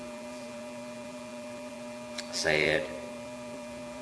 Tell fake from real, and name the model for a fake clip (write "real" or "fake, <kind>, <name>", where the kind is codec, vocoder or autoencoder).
fake, vocoder, BigVGAN v2